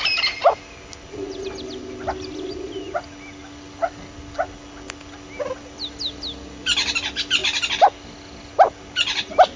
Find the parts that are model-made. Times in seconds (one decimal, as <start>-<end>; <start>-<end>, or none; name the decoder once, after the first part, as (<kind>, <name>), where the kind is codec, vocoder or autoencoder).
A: none

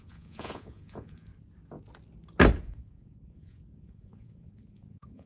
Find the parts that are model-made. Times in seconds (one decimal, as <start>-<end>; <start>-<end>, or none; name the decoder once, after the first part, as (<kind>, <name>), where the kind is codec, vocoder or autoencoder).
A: 0.0-1.3 (vocoder, Vocos); 2.6-5.3

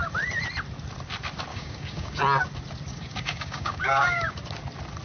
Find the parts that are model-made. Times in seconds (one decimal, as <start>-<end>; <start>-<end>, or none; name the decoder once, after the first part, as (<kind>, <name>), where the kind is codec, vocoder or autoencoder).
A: 1.5-2.2 (codec, DAC); 2.9-4.3